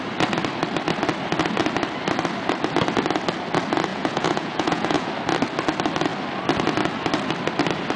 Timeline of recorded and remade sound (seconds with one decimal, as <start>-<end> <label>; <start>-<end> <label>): 0.0-3.9 recorded; 3.9-5.1 remade; 5.1-8.0 recorded